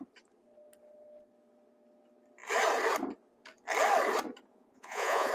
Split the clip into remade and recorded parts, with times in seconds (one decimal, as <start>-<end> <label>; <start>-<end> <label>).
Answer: 0.0-4.5 recorded; 4.5-5.3 remade